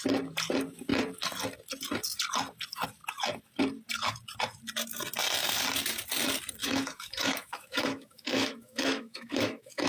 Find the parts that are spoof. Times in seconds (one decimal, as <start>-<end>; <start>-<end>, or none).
6.6-9.9

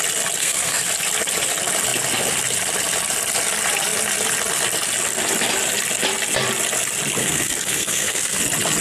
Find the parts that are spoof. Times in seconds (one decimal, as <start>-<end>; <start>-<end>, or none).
0.4-0.9; 7.2-8.4

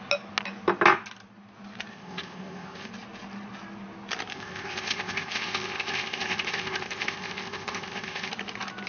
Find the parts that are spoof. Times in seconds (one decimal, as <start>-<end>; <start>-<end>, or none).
1.9-2.9; 4.3-8.3

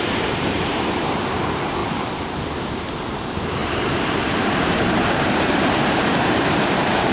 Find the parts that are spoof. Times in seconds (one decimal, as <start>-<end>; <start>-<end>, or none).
0.0-7.1